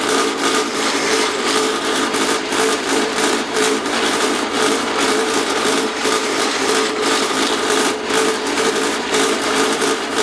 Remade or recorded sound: remade